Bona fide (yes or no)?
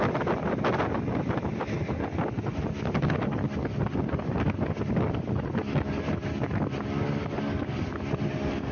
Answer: yes